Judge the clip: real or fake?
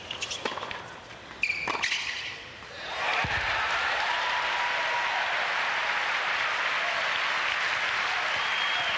real